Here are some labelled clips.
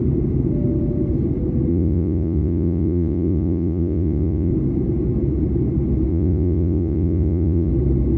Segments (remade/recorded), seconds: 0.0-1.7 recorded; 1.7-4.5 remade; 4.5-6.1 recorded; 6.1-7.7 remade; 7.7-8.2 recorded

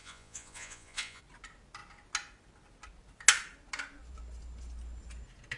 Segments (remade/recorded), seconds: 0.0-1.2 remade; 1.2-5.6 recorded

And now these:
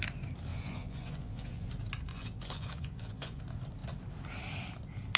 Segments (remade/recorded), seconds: 0.0-0.5 recorded; 0.5-1.7 remade; 1.7-2.1 recorded; 2.1-3.4 remade; 3.4-5.2 recorded

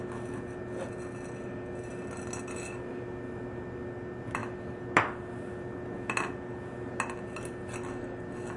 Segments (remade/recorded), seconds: 0.0-8.6 recorded

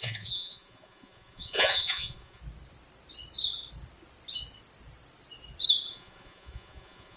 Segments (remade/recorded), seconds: 0.0-2.4 remade; 2.4-5.9 recorded; 5.9-7.2 remade

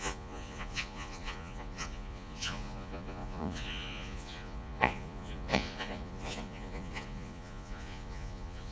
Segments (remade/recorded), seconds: 0.0-8.7 remade